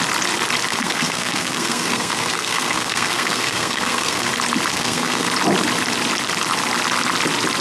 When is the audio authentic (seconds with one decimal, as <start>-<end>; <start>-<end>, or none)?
0.0-0.7; 4.3-4.7; 5.3-7.6